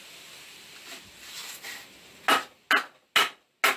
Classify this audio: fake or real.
real